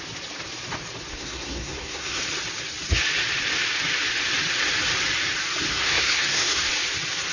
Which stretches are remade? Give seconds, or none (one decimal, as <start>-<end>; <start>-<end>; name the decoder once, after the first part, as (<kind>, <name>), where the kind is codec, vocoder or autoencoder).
1.1-2.2 (codec, SNAC); 5.7-6.7